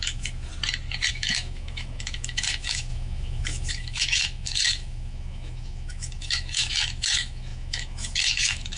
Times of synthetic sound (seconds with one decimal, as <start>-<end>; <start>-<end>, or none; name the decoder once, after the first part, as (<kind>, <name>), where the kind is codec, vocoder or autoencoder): 0.0-0.5 (autoencoder, DAC-VAE); 1.1-8.8